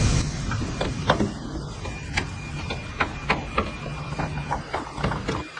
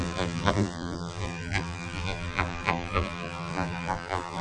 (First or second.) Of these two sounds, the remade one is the second